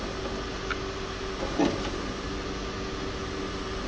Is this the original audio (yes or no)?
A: yes